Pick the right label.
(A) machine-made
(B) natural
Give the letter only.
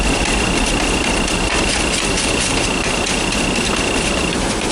A